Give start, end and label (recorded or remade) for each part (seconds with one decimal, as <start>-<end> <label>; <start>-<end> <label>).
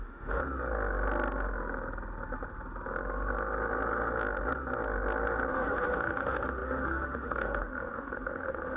0.0-0.4 remade; 0.4-5.5 recorded; 5.5-8.8 remade